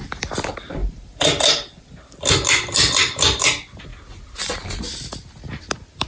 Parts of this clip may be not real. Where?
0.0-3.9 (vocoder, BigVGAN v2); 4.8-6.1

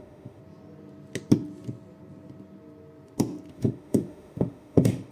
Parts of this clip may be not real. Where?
0.0-0.4 (autoencoder, DAC-VAE); 3.5-5.1

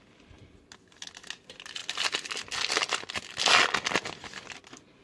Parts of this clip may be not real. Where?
none

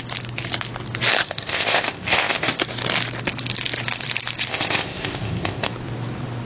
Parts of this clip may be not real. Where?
1.2-2.6 (codec, ZipCodec); 4.5-5.7

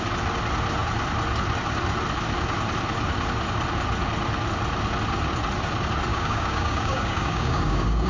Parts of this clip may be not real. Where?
6.1-8.1 (codec, DAC)